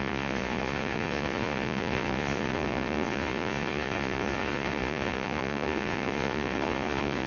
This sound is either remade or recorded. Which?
remade